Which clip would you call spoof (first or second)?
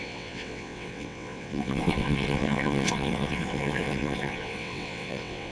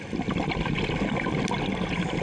first